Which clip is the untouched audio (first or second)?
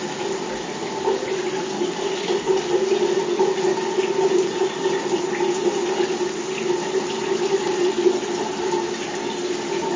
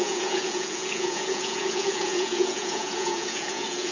first